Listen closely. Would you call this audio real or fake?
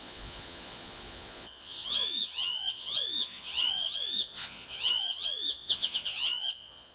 fake